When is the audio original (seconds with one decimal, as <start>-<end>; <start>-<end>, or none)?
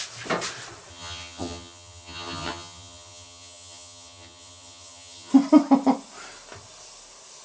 0.0-0.9; 5.3-7.4